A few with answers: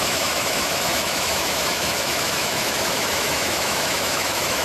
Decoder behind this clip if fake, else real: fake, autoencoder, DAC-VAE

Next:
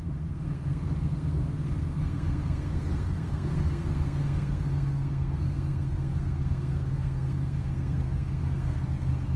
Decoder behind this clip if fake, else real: fake, codec, SNAC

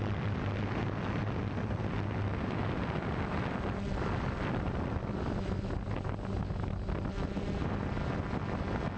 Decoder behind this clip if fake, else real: real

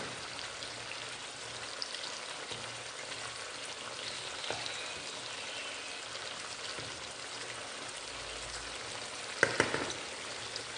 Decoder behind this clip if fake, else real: real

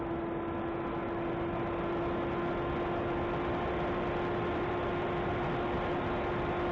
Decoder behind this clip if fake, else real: real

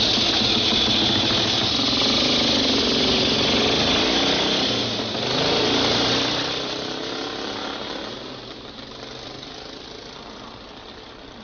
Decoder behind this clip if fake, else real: real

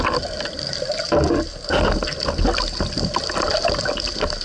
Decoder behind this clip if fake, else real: real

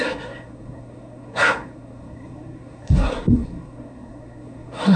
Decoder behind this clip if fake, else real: fake, codec, SNAC